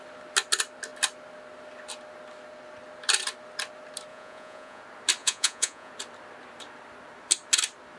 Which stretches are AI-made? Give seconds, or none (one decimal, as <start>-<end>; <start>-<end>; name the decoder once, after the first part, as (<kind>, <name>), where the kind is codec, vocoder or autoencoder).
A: 4.1-4.8 (vocoder, Vocos); 5.2-5.9